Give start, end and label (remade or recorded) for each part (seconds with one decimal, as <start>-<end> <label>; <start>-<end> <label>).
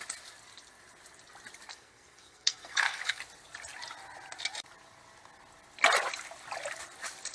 0.0-1.7 recorded; 1.7-3.2 remade; 3.2-7.3 recorded